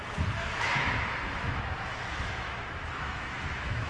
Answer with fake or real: fake